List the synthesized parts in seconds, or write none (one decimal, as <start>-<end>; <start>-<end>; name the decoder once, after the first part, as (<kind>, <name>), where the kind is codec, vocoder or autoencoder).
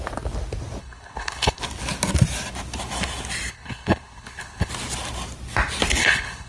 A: 0.8-1.6 (codec, HILCodec); 3.5-4.7; 6.0-6.5